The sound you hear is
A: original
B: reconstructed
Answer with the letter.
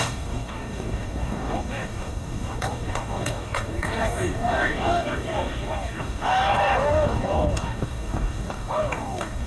B